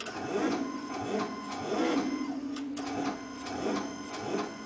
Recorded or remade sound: remade